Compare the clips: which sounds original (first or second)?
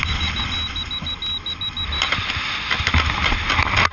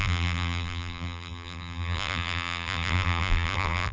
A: first